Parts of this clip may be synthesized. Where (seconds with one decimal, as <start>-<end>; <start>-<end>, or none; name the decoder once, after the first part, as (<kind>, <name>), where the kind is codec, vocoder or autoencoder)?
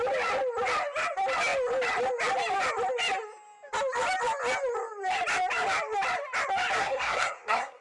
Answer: 6.8-7.8 (codec, SNAC)